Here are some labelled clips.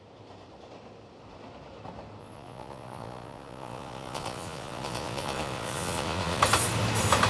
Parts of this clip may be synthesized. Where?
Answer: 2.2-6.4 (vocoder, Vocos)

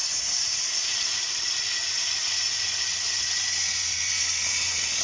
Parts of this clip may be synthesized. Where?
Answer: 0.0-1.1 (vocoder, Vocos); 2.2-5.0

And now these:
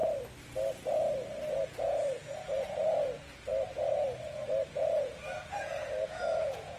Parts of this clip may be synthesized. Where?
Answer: 1.5-3.5 (vocoder, Vocos); 4.7-6.8

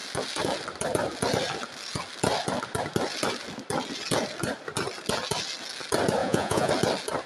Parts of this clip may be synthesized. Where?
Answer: 6.2-6.7 (vocoder, Vocos)

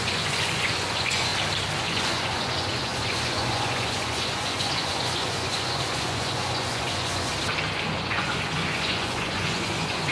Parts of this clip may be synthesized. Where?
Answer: 0.0-1.3 (vocoder, Vocos); 1.8-7.3; 7.9-10.1